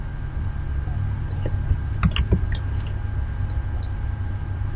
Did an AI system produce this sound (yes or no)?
no